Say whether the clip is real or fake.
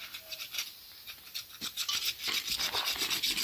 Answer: real